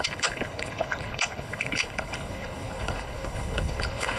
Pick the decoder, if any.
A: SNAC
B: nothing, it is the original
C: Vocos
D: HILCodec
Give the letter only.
D